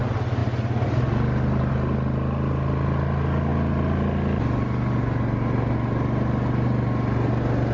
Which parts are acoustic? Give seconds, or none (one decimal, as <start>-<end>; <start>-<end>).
0.0-7.7